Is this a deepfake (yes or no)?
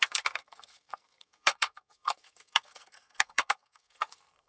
yes